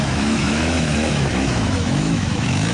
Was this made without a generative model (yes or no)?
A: no